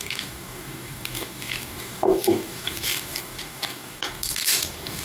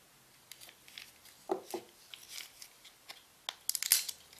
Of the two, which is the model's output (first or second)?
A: first